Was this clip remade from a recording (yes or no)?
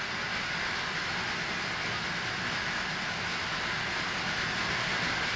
no